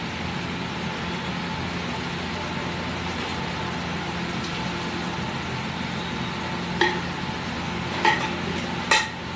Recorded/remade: recorded